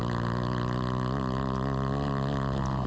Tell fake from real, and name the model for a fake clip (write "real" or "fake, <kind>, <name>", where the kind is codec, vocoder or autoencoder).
real